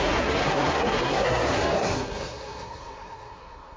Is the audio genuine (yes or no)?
no